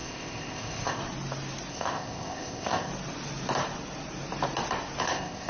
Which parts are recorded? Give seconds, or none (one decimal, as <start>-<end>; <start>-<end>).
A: 1.0-1.7; 2.9-5.0